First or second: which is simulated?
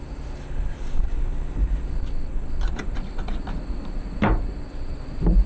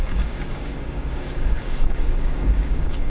second